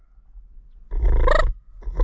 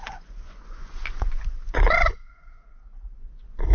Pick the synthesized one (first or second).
second